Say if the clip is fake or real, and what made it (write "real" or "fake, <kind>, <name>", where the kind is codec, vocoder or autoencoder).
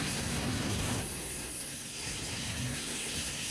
fake, codec, SNAC